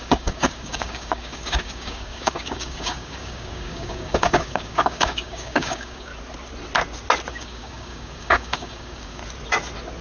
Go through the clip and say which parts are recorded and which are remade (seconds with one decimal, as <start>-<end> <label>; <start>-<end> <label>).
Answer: 0.0-6.1 remade; 6.1-7.3 recorded; 7.3-9.2 remade; 9.2-10.0 recorded